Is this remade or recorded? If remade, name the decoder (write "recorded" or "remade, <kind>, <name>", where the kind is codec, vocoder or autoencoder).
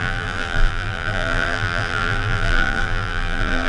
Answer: remade, vocoder, BigVGAN v2